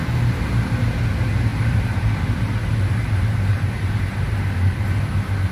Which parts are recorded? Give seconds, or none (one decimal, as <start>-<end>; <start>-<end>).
0.0-1.5; 4.8-5.5